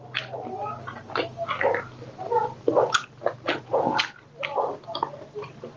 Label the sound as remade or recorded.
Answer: recorded